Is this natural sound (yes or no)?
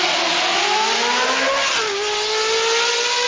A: yes